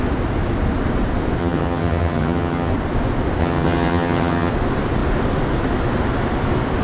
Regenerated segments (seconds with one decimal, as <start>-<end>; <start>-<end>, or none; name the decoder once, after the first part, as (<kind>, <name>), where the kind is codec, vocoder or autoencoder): 1.4-2.7 (vocoder, HiFi-GAN); 3.4-4.5